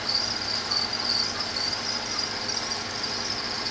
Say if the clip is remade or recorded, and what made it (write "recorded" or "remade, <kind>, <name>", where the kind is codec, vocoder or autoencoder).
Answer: recorded